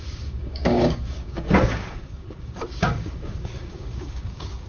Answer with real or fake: fake